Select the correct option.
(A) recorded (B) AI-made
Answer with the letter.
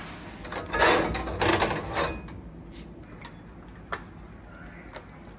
A